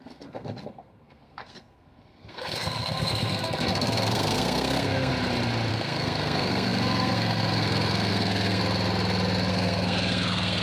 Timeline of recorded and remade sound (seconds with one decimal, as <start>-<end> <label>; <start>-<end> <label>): 0.0-5.1 remade; 5.1-5.7 recorded; 5.7-8.6 remade; 8.6-9.5 recorded; 9.5-10.6 remade